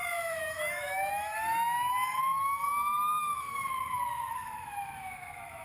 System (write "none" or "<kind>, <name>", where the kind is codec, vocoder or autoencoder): autoencoder, DAC-VAE